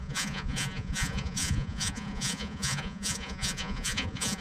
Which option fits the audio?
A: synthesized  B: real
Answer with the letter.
A